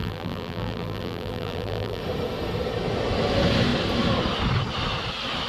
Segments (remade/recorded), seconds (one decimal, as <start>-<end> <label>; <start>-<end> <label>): 0.0-2.0 remade; 2.0-5.5 recorded